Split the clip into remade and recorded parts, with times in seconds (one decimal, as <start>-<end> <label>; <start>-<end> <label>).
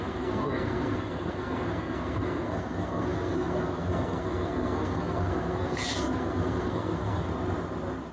0.0-7.3 remade; 7.3-8.1 recorded